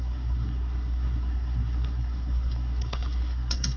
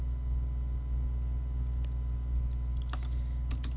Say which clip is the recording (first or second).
second